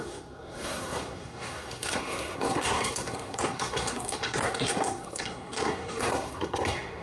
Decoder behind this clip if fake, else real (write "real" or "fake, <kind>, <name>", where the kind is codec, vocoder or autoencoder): fake, codec, SNAC